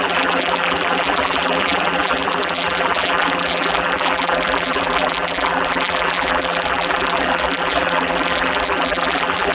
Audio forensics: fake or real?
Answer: fake